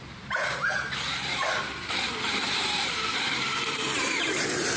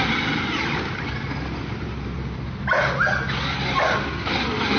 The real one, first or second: second